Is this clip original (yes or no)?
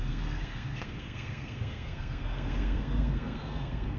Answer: no